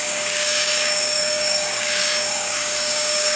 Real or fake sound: fake